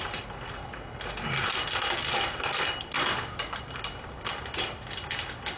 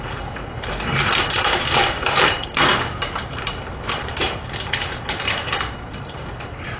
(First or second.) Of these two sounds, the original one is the first